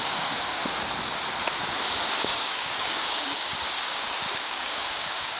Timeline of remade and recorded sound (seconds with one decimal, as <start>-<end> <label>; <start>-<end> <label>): 0.0-0.6 remade; 0.6-1.9 recorded; 1.9-5.4 remade